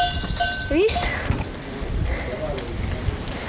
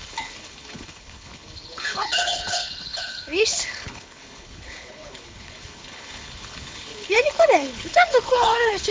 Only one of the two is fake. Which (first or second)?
second